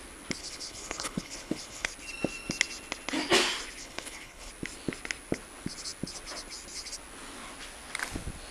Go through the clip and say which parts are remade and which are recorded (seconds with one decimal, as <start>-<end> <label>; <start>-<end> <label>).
0.0-0.4 recorded; 0.4-1.9 remade; 1.9-3.8 recorded; 3.8-4.5 remade; 4.5-8.5 recorded